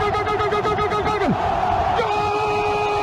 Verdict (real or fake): fake